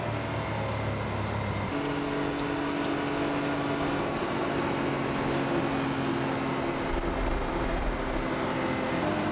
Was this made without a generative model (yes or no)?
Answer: yes